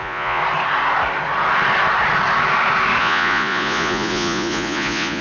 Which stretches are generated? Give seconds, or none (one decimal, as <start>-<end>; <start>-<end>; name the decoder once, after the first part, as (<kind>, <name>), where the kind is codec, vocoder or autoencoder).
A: 0.0-0.4 (vocoder, Vocos); 3.0-5.2